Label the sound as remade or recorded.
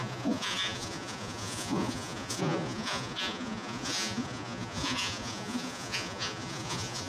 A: remade